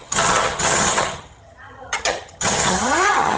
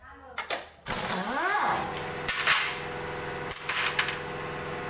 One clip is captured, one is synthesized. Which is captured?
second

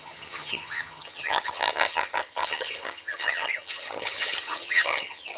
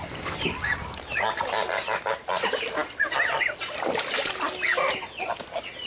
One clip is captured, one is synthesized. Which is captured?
second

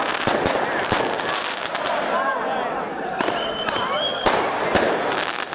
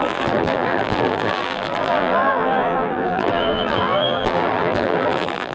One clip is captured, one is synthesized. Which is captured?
first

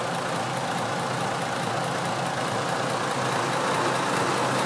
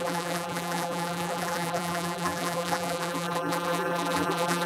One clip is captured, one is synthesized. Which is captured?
first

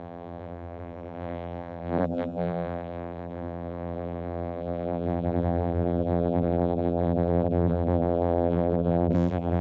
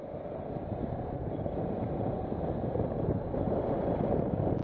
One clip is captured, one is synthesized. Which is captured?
second